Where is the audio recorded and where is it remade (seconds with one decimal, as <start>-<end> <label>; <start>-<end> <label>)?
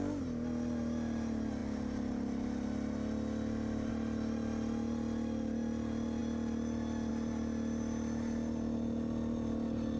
0.0-10.0 recorded